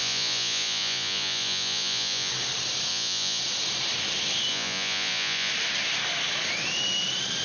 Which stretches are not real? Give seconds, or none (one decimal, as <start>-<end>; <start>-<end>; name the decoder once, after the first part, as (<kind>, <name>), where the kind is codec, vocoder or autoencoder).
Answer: 0.0-2.3 (vocoder, Vocos); 2.9-3.4; 4.5-5.5